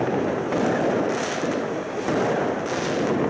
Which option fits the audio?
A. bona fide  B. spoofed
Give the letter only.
A